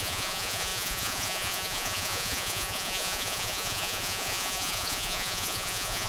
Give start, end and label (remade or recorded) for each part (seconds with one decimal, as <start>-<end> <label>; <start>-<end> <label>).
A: 0.0-6.1 remade